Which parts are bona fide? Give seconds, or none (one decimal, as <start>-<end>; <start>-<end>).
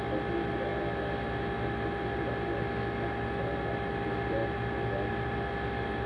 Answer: 0.0-6.1